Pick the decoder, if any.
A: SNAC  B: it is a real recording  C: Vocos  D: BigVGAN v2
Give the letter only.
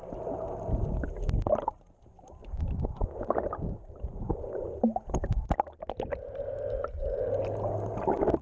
B